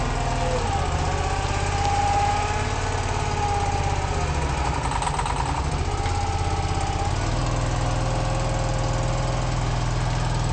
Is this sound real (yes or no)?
yes